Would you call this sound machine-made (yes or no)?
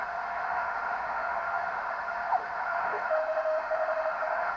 yes